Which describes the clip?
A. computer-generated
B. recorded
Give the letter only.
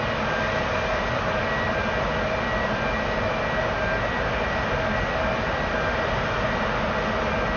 B